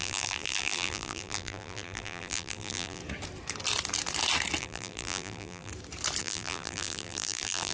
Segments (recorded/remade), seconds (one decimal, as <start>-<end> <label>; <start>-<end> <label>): 0.0-3.0 remade; 3.0-4.6 recorded; 4.6-5.7 remade; 5.7-6.2 recorded; 6.2-7.7 remade